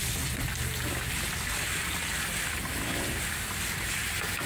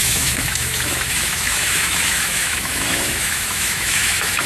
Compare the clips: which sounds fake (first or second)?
second